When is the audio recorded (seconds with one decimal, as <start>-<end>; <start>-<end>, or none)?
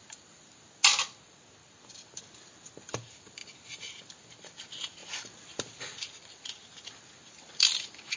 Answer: 0.0-8.2